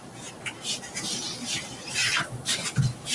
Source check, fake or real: fake